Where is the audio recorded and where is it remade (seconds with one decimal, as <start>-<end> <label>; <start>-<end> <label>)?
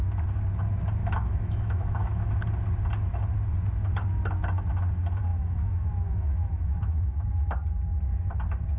0.0-1.0 recorded; 1.0-2.3 remade; 2.3-5.3 recorded; 5.3-7.3 remade; 7.3-8.8 recorded